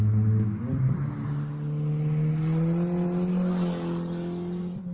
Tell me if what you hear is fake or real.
real